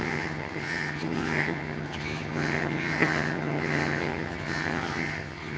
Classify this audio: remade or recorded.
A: remade